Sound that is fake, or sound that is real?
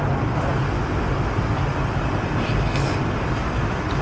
real